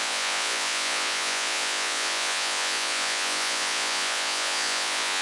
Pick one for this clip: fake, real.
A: fake